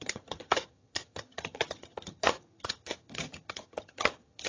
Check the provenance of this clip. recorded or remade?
remade